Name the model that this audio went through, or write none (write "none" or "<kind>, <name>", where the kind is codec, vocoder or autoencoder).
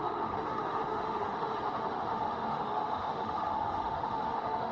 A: autoencoder, DAC-VAE